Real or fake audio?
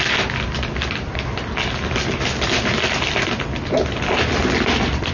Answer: real